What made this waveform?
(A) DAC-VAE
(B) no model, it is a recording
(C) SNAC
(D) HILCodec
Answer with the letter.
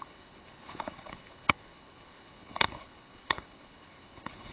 D